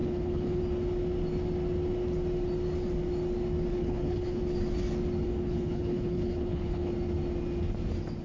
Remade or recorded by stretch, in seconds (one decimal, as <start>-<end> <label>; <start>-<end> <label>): 0.0-0.6 remade; 0.6-3.7 recorded; 3.7-4.4 remade; 4.4-5.2 recorded; 5.2-6.9 remade; 6.9-8.2 recorded